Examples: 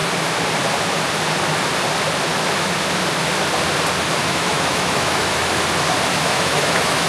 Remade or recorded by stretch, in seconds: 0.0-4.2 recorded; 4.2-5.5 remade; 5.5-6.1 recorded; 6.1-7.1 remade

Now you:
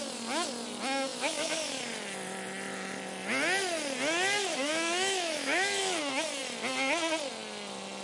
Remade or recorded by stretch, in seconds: 0.0-1.1 recorded; 1.1-1.8 remade; 1.8-4.5 recorded; 4.5-6.0 remade; 6.0-8.0 recorded

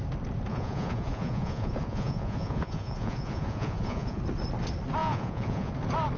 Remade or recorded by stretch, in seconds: 0.0-0.5 recorded; 0.5-4.2 remade; 4.2-5.0 recorded; 5.0-5.7 remade; 5.7-6.2 recorded

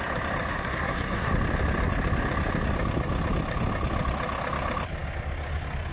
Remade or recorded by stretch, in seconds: 0.0-0.5 recorded; 0.5-1.3 remade; 1.3-5.9 recorded

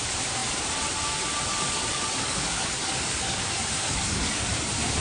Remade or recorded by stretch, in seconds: 0.0-1.5 recorded; 1.5-4.5 remade; 4.5-5.0 recorded